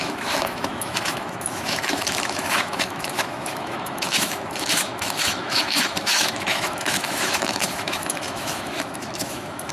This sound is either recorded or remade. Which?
remade